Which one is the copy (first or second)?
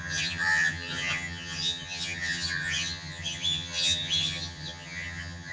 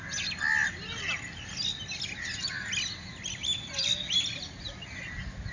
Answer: first